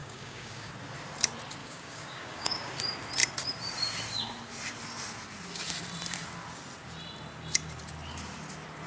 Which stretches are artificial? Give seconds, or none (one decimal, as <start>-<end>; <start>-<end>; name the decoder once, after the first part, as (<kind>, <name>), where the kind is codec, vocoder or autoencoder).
0.0-0.7 (codec, DAC); 1.6-2.7